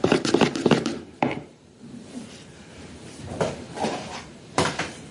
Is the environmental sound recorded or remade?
remade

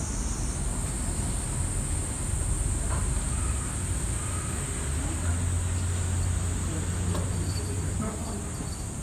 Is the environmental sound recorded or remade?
recorded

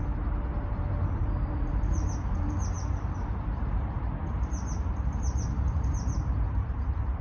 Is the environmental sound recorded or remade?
remade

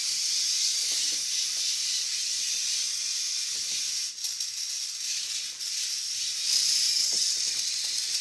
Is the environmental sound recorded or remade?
recorded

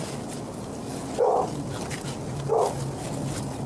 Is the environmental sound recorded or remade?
recorded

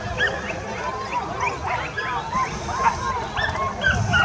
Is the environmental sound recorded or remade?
recorded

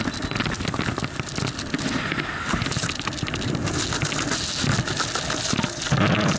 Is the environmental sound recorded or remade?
recorded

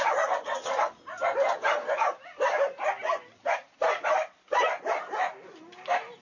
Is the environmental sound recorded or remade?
recorded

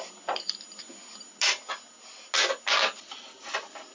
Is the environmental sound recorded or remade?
recorded